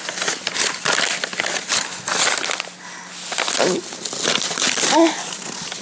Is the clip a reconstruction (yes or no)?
no